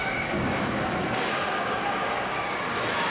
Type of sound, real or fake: fake